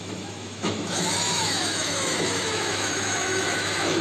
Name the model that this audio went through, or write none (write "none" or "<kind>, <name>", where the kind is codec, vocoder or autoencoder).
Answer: autoencoder, DAC-VAE